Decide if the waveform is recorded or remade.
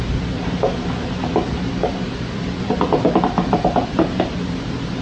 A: remade